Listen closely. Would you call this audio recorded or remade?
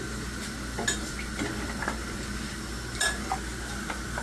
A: recorded